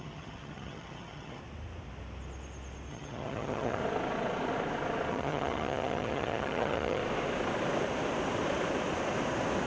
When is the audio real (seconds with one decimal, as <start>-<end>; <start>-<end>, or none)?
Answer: 1.4-2.9; 3.8-5.1; 7.0-9.7